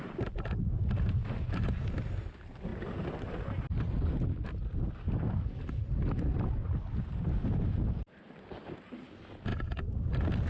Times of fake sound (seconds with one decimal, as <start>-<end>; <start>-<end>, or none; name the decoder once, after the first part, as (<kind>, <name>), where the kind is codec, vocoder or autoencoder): none